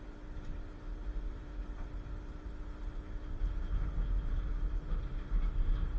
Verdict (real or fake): real